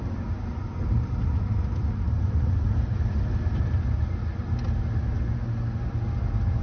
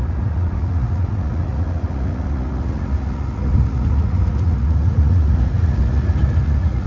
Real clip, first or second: first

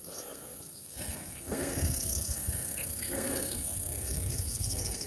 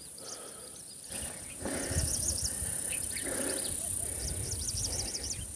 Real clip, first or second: second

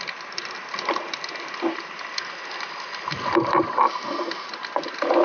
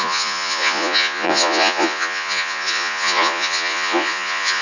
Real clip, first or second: first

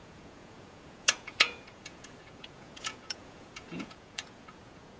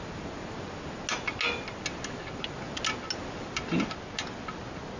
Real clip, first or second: second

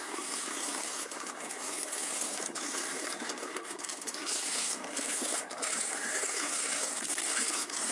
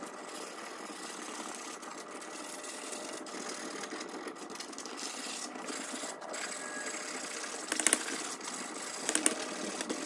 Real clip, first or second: second